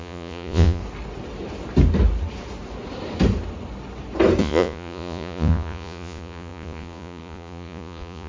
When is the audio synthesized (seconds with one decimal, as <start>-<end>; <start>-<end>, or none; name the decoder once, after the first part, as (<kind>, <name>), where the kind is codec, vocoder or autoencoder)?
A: 0.0-0.8 (vocoder, Vocos); 4.4-8.3